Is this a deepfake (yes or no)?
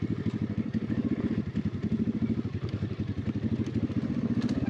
no